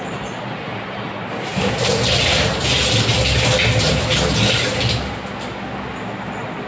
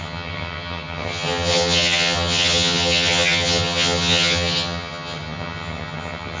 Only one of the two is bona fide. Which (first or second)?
first